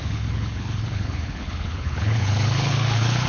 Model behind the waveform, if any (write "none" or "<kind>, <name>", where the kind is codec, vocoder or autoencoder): codec, HILCodec